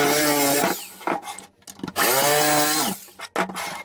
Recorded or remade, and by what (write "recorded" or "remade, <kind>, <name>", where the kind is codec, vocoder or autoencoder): recorded